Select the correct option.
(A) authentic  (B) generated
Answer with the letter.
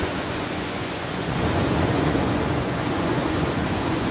B